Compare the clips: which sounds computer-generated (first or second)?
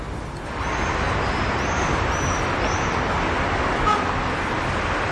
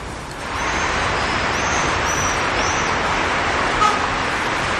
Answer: second